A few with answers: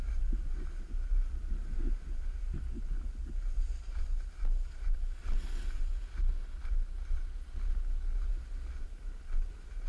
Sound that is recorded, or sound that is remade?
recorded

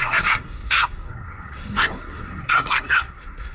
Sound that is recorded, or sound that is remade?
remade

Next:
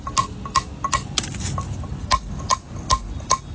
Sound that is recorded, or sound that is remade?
recorded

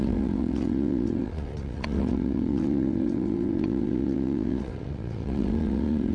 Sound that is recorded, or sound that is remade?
remade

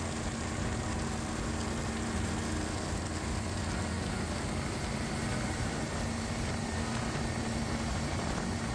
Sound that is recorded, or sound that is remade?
recorded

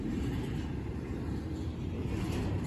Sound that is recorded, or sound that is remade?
remade